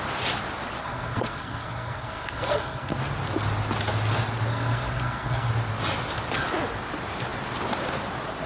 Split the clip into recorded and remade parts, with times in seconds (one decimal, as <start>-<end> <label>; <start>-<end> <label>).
0.0-0.8 recorded; 0.8-3.0 remade; 3.0-4.5 recorded; 4.5-5.5 remade; 5.5-8.5 recorded

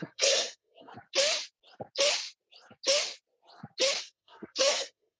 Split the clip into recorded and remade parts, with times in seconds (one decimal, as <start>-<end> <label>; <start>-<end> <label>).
0.0-0.9 remade; 0.9-4.0 recorded; 4.0-5.2 remade

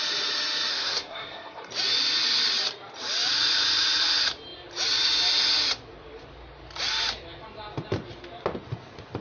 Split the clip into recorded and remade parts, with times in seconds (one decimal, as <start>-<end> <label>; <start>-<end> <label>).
0.0-0.7 recorded; 0.7-1.7 remade; 1.7-9.2 recorded

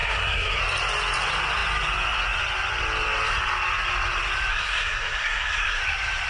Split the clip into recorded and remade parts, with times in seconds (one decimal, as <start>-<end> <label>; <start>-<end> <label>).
0.0-0.6 remade; 0.6-4.5 recorded; 4.5-5.8 remade; 5.8-6.3 recorded